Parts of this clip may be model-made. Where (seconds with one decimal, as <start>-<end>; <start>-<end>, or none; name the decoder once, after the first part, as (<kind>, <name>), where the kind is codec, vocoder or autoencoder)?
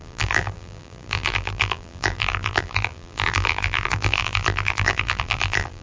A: 0.0-5.8 (vocoder, BigVGAN v2)